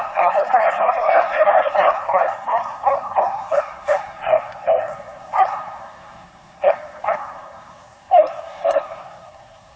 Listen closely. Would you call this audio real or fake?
fake